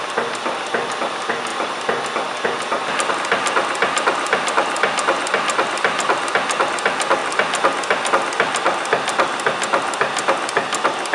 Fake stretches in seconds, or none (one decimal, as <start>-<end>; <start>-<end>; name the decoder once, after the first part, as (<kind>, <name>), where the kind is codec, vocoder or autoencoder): 0.4-1.1 (vocoder, BigVGAN v2)